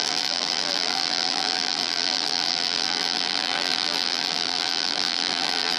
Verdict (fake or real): fake